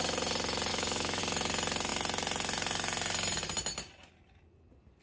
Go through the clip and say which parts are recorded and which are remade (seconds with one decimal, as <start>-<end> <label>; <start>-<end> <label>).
0.0-0.7 recorded; 0.7-1.2 remade; 1.2-5.0 recorded